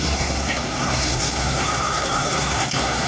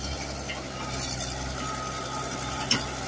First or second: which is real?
second